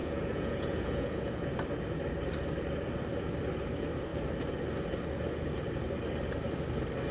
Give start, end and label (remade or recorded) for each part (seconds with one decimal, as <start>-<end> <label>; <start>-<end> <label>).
0.0-1.5 remade; 1.5-7.1 recorded